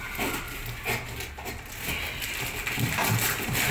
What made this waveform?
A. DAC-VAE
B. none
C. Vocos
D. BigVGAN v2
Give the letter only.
B